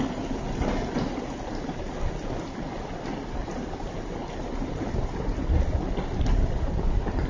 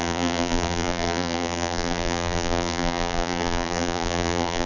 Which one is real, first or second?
first